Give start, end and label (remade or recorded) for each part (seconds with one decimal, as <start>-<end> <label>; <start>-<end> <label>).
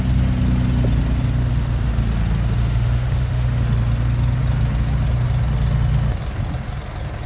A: 0.0-1.4 recorded; 1.4-1.9 remade; 1.9-2.6 recorded; 2.6-3.7 remade; 3.7-7.3 recorded